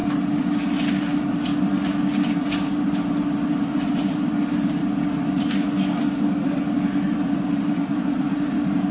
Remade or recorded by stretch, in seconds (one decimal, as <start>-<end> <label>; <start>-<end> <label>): 0.0-0.9 recorded; 0.9-1.5 remade; 1.5-3.5 recorded; 3.5-4.8 remade; 4.8-6.7 recorded; 6.7-8.9 remade